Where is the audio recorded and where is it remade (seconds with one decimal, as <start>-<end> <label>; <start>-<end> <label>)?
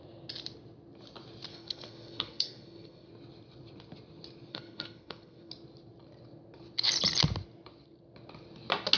0.0-1.5 recorded; 1.5-3.1 remade; 3.1-4.5 recorded; 4.5-5.5 remade; 5.5-9.0 recorded